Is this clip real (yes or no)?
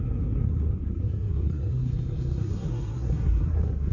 no